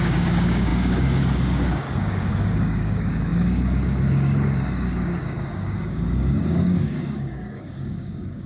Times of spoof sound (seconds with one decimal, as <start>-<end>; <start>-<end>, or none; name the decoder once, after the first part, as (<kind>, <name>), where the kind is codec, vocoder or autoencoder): 0.0-8.5 (codec, DAC)